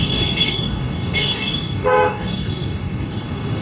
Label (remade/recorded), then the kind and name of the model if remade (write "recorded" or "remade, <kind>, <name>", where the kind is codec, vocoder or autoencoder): remade, codec, DAC